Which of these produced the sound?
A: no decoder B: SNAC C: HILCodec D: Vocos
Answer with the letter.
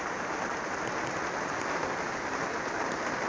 A